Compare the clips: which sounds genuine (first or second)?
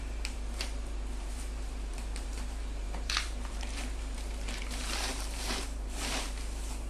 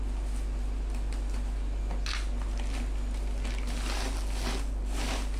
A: second